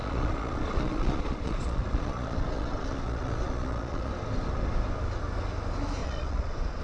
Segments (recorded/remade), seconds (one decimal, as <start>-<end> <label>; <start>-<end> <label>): 0.0-4.1 remade; 4.1-6.0 recorded; 6.0-6.8 remade